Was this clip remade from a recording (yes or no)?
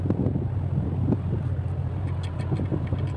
no